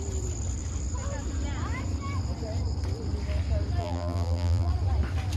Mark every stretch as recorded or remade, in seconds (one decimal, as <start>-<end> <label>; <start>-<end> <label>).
0.0-3.8 recorded; 3.8-4.7 remade; 4.7-5.4 recorded